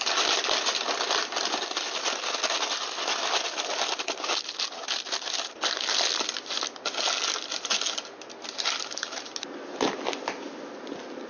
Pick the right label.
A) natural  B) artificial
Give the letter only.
A